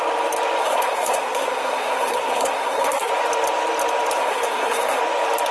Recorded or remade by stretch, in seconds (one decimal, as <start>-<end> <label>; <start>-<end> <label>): 0.0-0.6 recorded; 0.6-3.1 remade; 3.1-4.2 recorded; 4.2-5.0 remade; 5.0-5.5 recorded